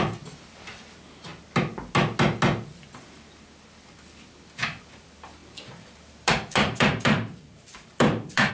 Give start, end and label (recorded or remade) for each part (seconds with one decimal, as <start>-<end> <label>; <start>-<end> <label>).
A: 0.0-5.4 recorded; 5.4-8.5 remade